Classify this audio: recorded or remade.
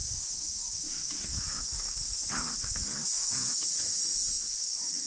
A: remade